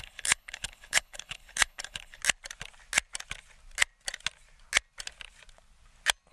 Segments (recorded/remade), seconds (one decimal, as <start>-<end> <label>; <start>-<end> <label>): 0.0-2.2 remade; 2.2-6.3 recorded

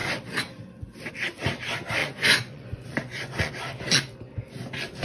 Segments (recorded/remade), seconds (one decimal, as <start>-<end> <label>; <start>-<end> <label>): 0.0-2.0 recorded; 2.0-3.5 remade; 3.5-5.0 recorded